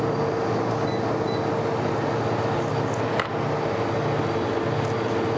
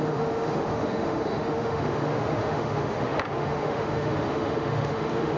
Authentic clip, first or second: first